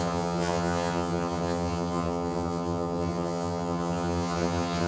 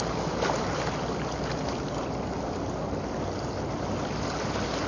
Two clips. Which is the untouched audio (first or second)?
second